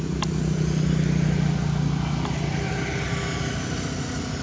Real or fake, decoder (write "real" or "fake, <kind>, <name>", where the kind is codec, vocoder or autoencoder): real